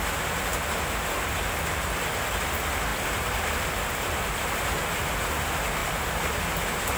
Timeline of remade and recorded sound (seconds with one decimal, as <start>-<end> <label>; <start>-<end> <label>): 0.0-2.9 recorded; 2.9-4.6 remade; 4.6-5.8 recorded; 5.8-6.4 remade; 6.4-7.0 recorded